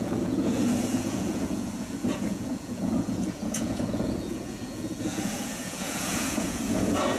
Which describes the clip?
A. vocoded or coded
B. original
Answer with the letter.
A